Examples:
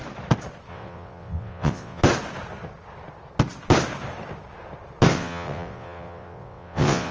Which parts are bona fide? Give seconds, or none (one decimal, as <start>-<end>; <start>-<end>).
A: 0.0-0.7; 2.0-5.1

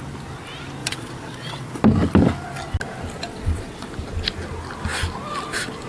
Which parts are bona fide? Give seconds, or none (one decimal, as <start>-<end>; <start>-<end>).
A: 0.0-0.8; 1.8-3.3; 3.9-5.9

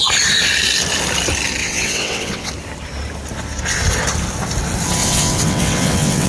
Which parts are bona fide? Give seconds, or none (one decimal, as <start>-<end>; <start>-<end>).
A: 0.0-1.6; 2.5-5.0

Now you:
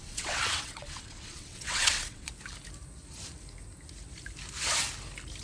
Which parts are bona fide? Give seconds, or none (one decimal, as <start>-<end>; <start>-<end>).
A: 2.3-5.4

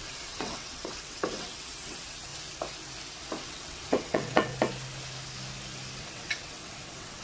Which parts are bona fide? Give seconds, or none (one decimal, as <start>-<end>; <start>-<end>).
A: 2.3-3.4; 4.5-6.0

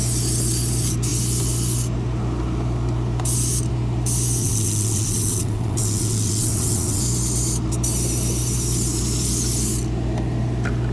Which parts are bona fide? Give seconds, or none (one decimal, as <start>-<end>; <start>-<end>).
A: 0.0-4.4; 7.0-10.9